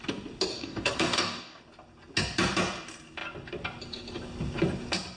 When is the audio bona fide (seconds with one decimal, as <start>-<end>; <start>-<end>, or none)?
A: 0.0-0.5; 1.6-5.2